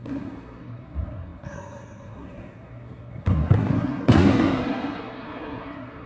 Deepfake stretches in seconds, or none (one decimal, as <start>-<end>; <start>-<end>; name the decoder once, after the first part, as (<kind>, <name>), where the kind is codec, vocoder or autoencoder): 0.0-6.1 (codec, SNAC)